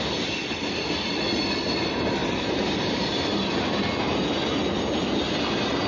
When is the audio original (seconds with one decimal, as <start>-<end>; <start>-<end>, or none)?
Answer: 0.0-5.9